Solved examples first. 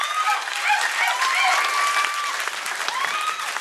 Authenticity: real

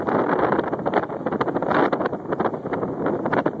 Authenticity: real